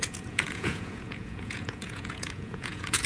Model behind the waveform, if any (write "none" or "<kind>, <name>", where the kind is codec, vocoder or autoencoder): vocoder, Vocos